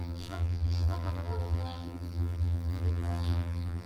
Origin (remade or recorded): remade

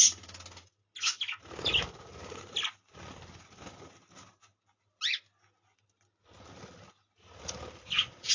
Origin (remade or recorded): recorded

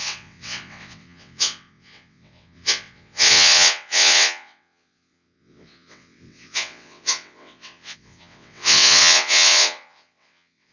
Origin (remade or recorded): remade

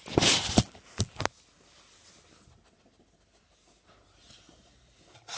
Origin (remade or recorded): recorded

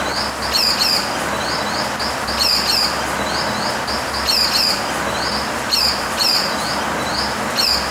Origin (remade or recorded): recorded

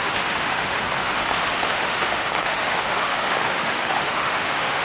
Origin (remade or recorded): remade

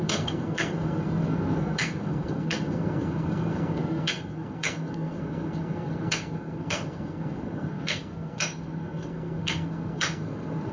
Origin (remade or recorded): remade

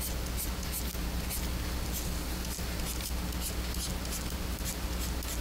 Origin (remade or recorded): recorded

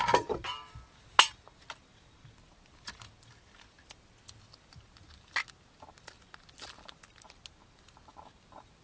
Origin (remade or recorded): recorded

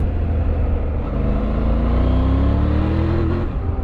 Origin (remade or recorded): recorded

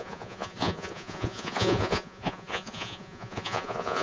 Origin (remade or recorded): remade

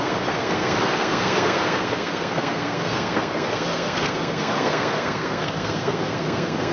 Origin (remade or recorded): remade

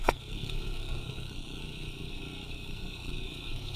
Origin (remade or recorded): remade